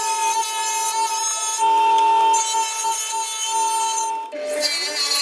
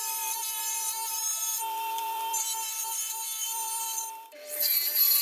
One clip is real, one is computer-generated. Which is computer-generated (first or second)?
second